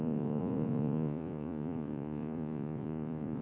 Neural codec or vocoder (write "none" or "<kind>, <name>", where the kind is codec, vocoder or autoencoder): vocoder, Vocos